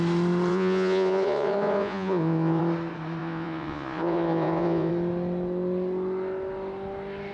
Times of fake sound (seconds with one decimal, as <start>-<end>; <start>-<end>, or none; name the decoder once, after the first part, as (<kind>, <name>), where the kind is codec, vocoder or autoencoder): 0.5-2.6 (vocoder, Vocos); 3.2-4.9